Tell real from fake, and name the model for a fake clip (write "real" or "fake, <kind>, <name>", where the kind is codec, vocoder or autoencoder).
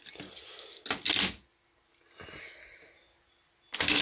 real